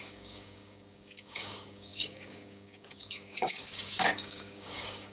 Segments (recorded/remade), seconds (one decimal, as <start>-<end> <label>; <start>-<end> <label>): 0.0-5.1 remade